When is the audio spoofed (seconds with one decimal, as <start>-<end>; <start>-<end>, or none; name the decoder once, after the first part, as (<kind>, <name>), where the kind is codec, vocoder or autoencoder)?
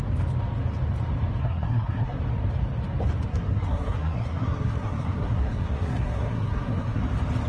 1.4-2.2 (codec, SNAC); 3.3-7.0